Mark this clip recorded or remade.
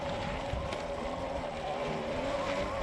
remade